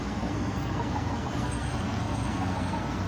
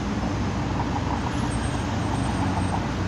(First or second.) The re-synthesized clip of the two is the first